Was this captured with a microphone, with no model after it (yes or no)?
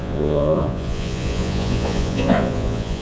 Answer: no